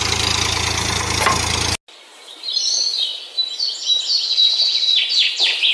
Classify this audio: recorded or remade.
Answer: recorded